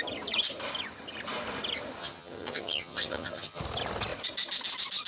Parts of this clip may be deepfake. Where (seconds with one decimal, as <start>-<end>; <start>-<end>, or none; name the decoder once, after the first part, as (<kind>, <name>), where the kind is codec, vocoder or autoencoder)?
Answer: 2.0-3.6 (vocoder, HiFi-GAN)